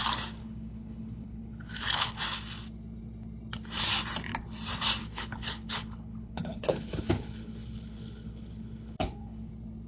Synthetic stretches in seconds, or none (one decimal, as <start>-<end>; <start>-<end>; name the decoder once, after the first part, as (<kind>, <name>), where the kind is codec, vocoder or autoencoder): 0.4-2.2 (codec, HILCodec); 5.0-9.5

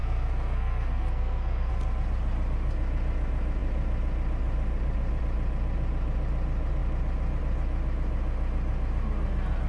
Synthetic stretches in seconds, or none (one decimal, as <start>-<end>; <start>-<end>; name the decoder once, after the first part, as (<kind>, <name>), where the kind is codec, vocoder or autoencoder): 0.0-1.7 (codec, SNAC)

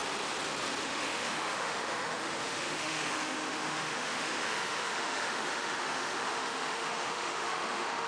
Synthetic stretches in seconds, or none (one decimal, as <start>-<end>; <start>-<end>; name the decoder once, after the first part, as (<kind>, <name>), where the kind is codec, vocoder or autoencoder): 0.8-8.1 (autoencoder, DAC-VAE)

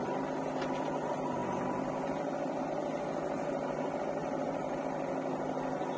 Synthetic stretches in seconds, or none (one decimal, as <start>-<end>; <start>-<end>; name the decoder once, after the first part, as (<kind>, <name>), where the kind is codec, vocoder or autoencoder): 4.2-4.8 (vocoder, BigVGAN v2)

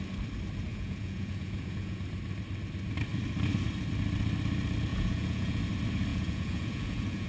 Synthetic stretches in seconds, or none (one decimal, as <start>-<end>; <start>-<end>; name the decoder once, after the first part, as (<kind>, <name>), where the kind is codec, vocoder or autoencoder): 0.7-2.0 (vocoder, Vocos); 4.9-5.6; 6.1-7.3

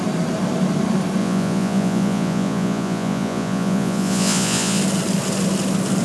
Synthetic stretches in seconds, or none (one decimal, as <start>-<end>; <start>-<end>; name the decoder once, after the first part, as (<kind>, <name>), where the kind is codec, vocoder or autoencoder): 1.2-4.8 (vocoder, Vocos)

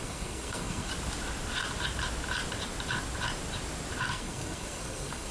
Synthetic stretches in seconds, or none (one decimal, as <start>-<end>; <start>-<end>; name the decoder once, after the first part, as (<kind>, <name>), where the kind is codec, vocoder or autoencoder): 0.0-0.9 (codec, SNAC); 4.1-5.3